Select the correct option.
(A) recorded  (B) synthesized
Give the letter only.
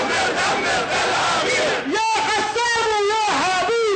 A